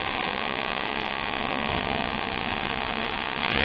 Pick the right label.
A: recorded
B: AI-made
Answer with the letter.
B